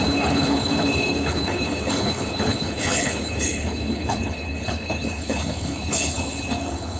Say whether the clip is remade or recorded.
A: remade